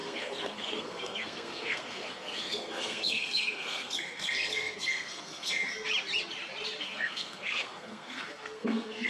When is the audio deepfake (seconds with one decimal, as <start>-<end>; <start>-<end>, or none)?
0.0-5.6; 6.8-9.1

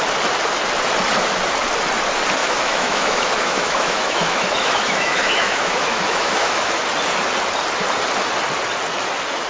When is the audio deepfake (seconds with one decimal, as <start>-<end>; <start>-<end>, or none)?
2.4-6.8

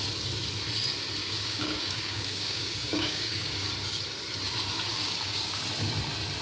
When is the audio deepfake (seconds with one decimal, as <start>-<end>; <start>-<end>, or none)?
1.2-3.7; 4.9-5.6

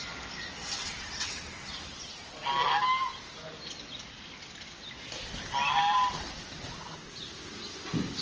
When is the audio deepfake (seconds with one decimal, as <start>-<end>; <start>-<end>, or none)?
0.6-1.4

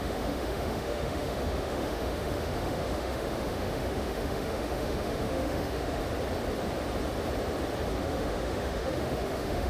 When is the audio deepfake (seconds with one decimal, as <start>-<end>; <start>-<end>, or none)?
0.0-6.0; 8.0-9.7

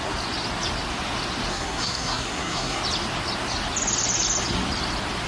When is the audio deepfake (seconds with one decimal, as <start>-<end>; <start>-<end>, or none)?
1.5-2.8

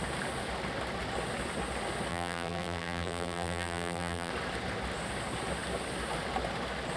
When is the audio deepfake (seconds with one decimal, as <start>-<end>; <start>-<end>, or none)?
2.1-4.3

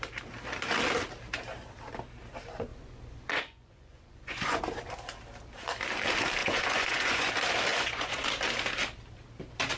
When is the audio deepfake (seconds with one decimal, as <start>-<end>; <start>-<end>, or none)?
2.7-4.6; 6.4-7.3; 7.7-8.3